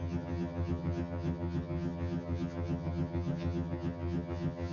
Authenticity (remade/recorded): remade